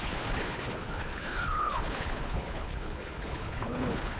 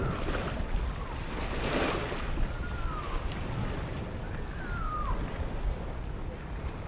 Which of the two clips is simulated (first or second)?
first